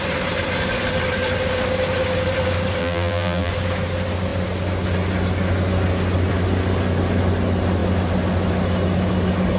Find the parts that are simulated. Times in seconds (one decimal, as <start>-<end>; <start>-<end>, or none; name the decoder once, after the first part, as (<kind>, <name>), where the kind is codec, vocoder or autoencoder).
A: 2.8-3.5 (vocoder, BigVGAN v2)